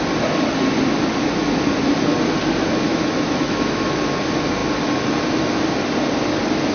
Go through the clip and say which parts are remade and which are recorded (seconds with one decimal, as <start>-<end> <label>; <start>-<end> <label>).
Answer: 0.0-2.9 recorded; 2.9-3.9 remade; 3.9-6.7 recorded

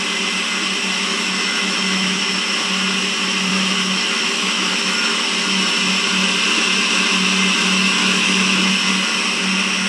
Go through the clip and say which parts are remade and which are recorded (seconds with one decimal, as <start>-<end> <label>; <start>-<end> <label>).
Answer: 0.0-1.1 recorded; 1.1-2.2 remade; 2.2-3.5 recorded; 3.5-5.2 remade; 5.2-8.0 recorded; 8.0-8.7 remade; 8.7-9.9 recorded

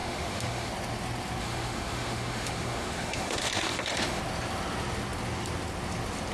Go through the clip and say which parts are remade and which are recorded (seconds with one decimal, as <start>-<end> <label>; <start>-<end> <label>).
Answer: 0.0-0.7 remade; 0.7-1.4 recorded; 1.4-4.2 remade; 4.2-6.3 recorded

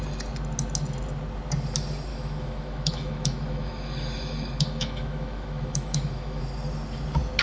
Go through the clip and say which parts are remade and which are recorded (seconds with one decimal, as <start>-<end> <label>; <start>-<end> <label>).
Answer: 0.0-2.1 recorded; 2.1-6.4 remade; 6.4-7.4 recorded

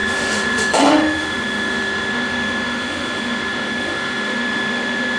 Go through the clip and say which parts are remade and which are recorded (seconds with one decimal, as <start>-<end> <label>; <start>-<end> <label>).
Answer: 0.0-5.2 remade

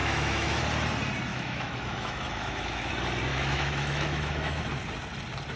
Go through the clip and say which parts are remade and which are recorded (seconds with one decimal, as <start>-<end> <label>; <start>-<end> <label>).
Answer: 0.0-0.6 remade; 0.6-1.3 recorded; 1.3-2.9 remade; 2.9-3.3 recorded; 3.3-4.6 remade; 4.6-5.6 recorded

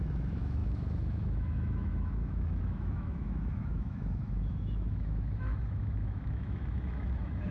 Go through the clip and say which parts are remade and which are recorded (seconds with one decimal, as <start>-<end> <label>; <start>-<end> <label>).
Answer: 0.0-7.5 remade